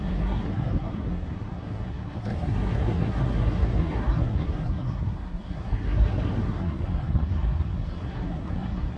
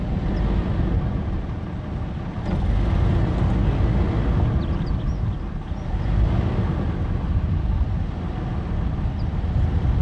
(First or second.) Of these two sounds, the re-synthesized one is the first